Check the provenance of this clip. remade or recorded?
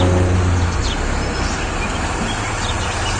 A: recorded